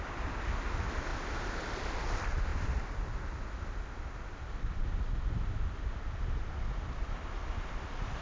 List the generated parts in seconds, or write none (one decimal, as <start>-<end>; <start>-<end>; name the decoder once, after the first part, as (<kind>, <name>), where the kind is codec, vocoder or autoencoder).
none